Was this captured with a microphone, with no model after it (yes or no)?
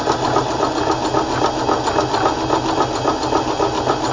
yes